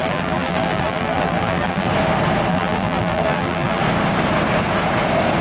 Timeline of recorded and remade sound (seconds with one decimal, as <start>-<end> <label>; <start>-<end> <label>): 0.0-1.9 remade; 1.9-2.5 recorded; 2.5-3.8 remade; 3.8-5.4 recorded